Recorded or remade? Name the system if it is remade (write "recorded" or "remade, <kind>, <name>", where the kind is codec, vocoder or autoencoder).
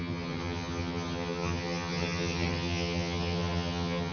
remade, vocoder, HiFi-GAN